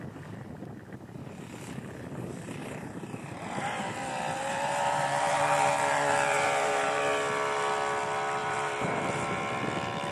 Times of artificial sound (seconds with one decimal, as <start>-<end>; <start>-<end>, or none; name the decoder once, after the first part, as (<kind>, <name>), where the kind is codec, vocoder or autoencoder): 2.6-7.0 (vocoder, BigVGAN v2); 8.4-9.4